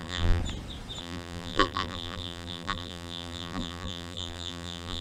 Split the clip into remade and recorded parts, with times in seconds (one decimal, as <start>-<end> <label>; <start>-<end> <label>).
0.0-0.4 remade; 0.4-1.0 recorded; 1.0-5.0 remade